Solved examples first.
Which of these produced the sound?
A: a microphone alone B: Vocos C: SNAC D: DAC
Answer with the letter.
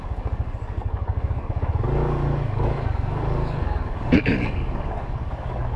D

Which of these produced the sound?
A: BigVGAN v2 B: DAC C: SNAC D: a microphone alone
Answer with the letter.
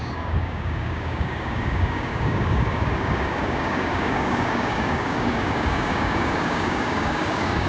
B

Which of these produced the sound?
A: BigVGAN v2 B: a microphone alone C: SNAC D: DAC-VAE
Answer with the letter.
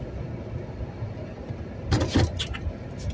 B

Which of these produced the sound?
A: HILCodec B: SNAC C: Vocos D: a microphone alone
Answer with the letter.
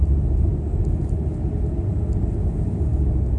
D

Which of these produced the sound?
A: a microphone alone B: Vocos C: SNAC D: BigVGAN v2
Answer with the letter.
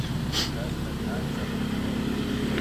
A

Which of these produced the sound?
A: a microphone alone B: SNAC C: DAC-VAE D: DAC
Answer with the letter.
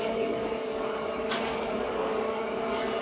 D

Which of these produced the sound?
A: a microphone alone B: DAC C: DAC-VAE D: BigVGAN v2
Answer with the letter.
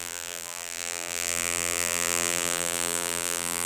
D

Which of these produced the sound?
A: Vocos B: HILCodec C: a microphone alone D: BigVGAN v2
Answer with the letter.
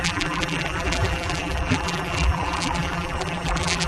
D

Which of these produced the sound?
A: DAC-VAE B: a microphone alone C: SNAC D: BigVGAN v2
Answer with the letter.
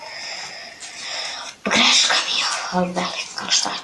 B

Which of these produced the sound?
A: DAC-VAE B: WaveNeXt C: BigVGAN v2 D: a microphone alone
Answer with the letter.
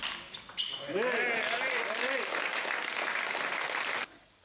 D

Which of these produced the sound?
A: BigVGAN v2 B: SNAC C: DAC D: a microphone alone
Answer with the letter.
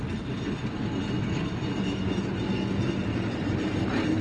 D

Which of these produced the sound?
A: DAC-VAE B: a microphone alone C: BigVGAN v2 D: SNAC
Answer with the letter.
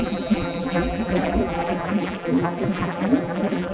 C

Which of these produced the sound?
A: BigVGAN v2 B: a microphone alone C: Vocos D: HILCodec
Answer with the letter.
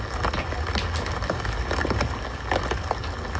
B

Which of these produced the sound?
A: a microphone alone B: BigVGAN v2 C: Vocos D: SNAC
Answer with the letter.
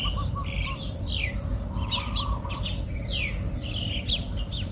A